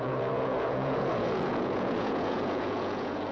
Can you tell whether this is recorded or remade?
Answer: remade